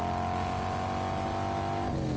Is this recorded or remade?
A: recorded